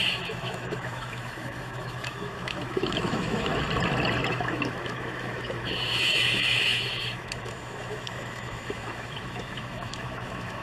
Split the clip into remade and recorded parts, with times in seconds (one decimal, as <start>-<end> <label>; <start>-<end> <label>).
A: 0.0-3.5 remade; 3.5-4.3 recorded; 4.3-10.6 remade